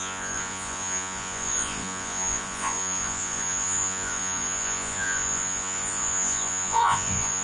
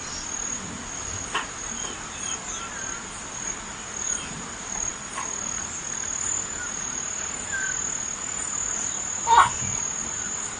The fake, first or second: first